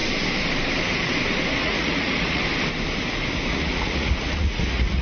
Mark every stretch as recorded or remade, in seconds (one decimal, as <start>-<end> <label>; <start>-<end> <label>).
0.0-1.6 recorded; 1.6-2.4 remade; 2.4-3.5 recorded; 3.5-5.0 remade